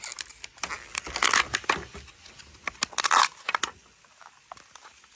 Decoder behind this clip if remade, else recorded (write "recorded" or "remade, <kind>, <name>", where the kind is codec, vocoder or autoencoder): recorded